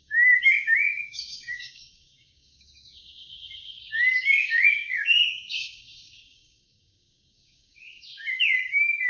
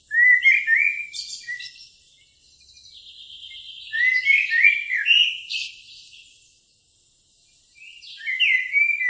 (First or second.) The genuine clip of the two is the second